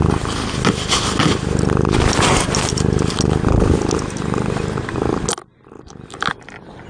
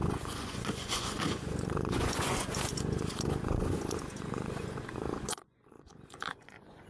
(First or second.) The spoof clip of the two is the second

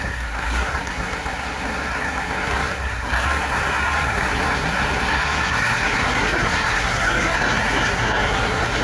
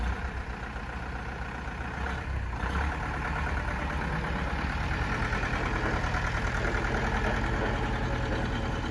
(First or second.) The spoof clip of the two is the first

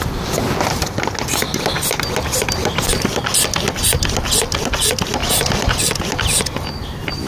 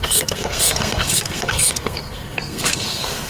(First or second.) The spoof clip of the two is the second